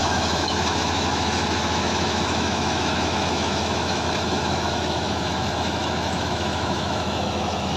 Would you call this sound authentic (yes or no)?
no